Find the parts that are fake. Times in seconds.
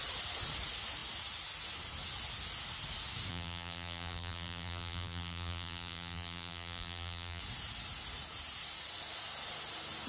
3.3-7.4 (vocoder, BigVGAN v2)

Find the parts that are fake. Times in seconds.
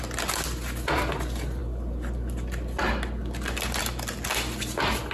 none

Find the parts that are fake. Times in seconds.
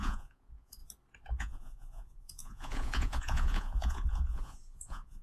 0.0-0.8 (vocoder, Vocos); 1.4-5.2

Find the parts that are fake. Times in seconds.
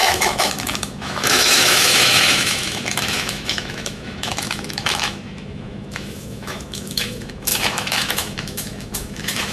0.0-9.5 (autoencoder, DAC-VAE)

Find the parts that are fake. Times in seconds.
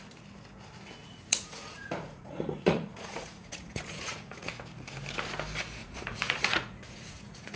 1.0-4.5 (vocoder, Vocos); 5.8-7.6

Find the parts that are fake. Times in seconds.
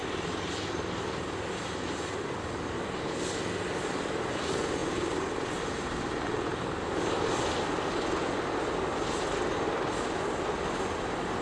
none